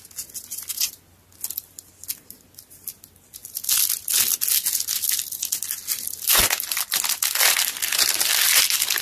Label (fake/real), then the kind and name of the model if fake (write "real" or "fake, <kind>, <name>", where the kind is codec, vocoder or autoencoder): real